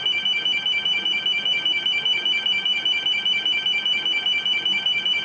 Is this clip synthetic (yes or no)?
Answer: yes